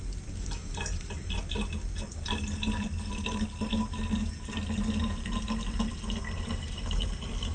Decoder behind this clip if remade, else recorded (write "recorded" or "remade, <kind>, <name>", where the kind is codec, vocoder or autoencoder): recorded